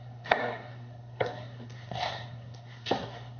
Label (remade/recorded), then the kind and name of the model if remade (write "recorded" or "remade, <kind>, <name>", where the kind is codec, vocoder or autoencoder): remade, codec, SNAC